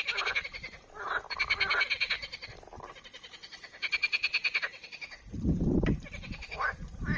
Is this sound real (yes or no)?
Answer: yes